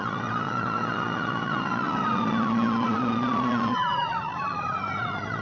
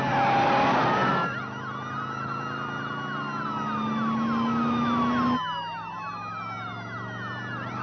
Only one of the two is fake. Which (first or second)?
first